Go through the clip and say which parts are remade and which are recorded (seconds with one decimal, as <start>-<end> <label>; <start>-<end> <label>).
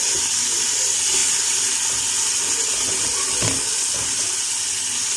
0.0-5.2 recorded